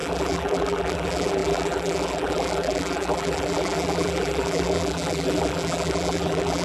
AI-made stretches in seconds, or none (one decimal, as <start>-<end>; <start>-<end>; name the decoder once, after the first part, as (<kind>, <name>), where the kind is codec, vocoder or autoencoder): 0.0-6.6 (vocoder, BigVGAN v2)